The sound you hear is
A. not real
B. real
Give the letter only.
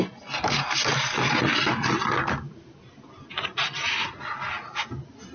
B